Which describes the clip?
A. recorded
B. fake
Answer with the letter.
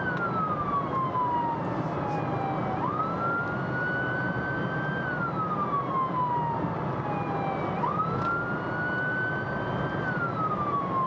A